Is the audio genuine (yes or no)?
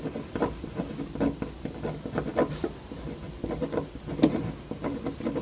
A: yes